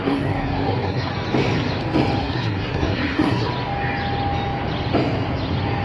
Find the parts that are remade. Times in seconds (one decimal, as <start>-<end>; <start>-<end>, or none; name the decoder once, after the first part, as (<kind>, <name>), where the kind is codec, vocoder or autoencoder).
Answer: 0.0-1.1 (codec, SNAC); 2.2-3.5